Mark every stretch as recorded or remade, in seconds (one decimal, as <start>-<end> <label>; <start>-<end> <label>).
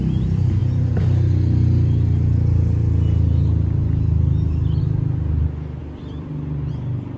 0.0-5.8 recorded; 5.8-6.7 remade; 6.7-7.2 recorded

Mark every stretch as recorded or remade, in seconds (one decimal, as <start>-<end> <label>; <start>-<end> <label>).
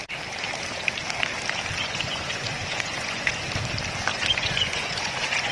0.0-1.8 recorded; 1.8-3.4 remade; 3.4-4.1 recorded; 4.1-5.5 remade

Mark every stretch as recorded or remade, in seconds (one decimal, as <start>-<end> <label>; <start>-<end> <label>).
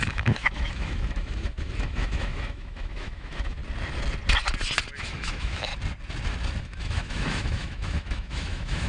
0.0-3.6 remade; 3.6-5.0 recorded; 5.0-5.7 remade; 5.7-6.6 recorded; 6.6-8.9 remade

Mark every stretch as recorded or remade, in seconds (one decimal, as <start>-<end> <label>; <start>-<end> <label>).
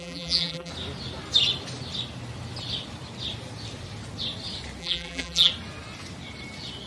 0.0-0.7 remade; 0.7-4.8 recorded; 4.8-5.5 remade; 5.5-6.9 recorded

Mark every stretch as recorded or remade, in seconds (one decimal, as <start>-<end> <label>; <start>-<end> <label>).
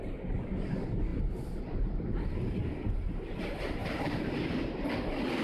0.0-3.8 recorded; 3.8-4.4 remade; 4.4-5.4 recorded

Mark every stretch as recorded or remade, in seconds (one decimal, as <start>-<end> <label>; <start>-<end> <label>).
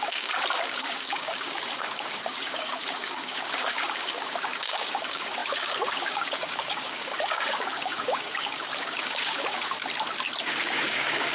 0.0-9.8 remade; 9.8-10.4 recorded; 10.4-11.3 remade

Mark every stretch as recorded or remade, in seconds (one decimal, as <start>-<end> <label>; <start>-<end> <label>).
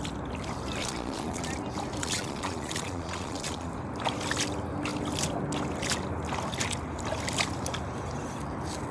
0.0-0.8 recorded; 0.8-1.5 remade; 1.5-2.0 recorded; 2.0-3.7 remade; 3.7-8.9 recorded